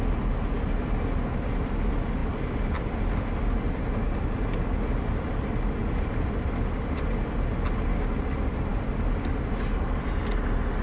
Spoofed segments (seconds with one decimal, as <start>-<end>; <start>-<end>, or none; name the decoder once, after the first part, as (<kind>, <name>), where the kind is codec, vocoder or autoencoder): none